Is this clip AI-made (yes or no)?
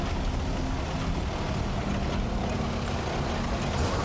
no